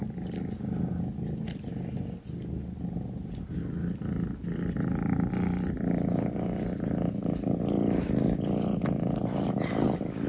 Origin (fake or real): real